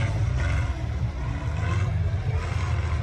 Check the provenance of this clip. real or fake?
real